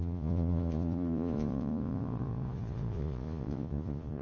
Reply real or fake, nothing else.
fake